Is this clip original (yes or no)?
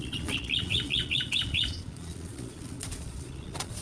no